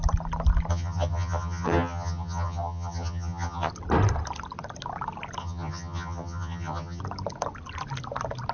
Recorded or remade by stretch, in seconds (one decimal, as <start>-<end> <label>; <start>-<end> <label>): 0.0-0.7 recorded; 0.7-3.7 remade; 3.7-5.4 recorded; 5.4-7.0 remade; 7.0-8.5 recorded